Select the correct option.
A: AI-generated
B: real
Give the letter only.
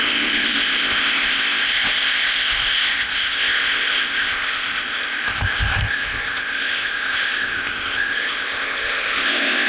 A